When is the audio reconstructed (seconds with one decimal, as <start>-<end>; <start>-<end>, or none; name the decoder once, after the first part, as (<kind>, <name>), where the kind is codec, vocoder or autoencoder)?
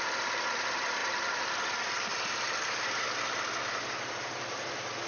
none